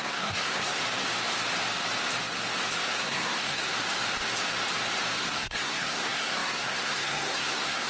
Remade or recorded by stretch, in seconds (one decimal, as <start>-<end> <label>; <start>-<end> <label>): 0.0-0.8 remade; 0.8-3.0 recorded; 3.0-3.7 remade; 3.7-5.2 recorded; 5.2-7.9 remade

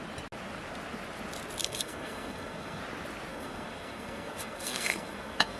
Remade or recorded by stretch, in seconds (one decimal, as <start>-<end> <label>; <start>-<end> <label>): 0.0-1.6 recorded; 1.6-2.8 remade; 2.8-3.3 recorded; 3.3-5.6 remade

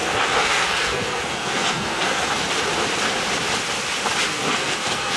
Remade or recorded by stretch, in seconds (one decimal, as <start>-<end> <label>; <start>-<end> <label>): 0.0-2.5 remade; 2.5-4.3 recorded; 4.3-5.2 remade

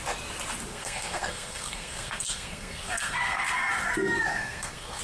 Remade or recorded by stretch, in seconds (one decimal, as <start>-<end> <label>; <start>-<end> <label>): 0.0-0.7 recorded; 0.7-3.7 remade; 3.7-4.3 recorded; 4.3-5.0 remade